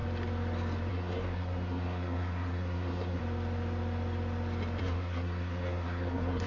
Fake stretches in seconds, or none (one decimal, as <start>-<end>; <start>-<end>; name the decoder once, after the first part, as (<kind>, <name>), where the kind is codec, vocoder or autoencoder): 0.9-3.2 (codec, SNAC); 4.8-6.5